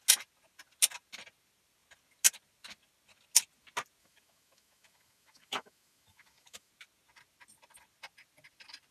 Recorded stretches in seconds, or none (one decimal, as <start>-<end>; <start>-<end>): 0.0-4.0; 6.7-8.9